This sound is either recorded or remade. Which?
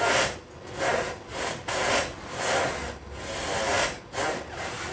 recorded